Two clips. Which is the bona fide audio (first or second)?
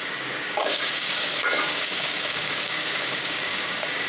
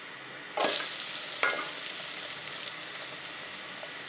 second